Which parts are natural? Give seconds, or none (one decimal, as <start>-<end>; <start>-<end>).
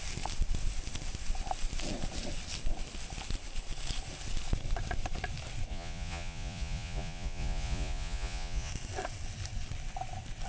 0.0-5.7; 8.7-10.5